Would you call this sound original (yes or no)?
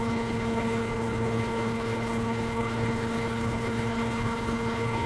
no